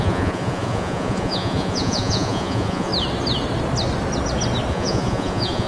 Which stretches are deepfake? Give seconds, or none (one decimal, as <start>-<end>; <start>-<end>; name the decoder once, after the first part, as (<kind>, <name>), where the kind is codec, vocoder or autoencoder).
0.0-2.9 (vocoder, Vocos); 4.7-5.7